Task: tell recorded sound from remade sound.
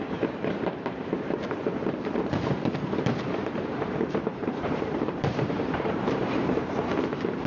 remade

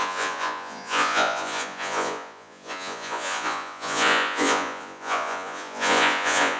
remade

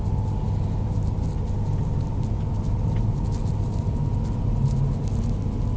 recorded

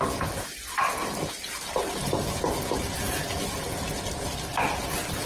recorded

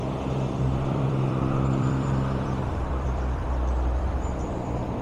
remade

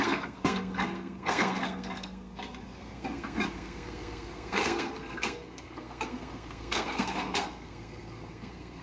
remade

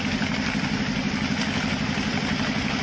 recorded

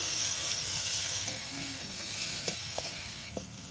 remade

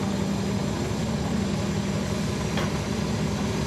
recorded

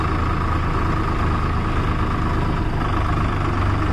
recorded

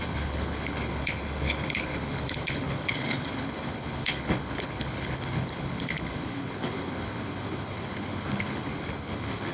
remade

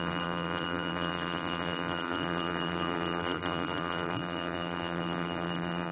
remade